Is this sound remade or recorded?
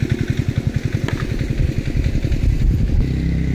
recorded